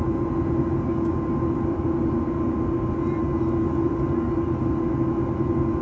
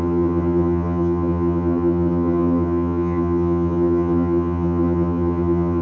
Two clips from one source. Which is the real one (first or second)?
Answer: first